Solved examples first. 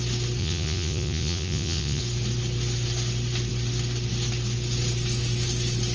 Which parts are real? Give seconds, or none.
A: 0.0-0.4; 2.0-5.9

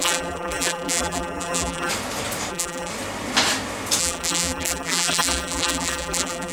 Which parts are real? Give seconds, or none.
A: 1.9-2.5; 2.9-4.0